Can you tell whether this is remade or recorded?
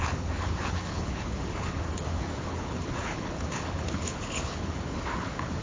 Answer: remade